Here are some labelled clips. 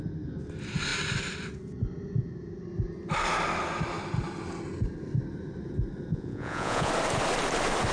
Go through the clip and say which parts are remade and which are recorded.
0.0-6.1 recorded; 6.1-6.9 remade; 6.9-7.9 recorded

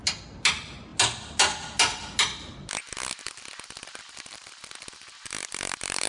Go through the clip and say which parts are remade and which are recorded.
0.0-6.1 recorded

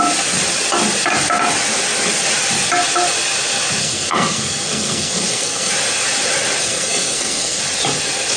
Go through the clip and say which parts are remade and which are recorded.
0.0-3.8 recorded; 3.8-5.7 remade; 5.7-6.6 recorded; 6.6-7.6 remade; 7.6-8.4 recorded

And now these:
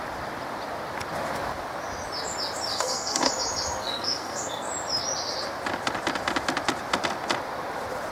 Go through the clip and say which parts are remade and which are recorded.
0.0-2.7 recorded; 2.7-3.3 remade; 3.3-3.8 recorded; 3.8-4.7 remade; 4.7-8.1 recorded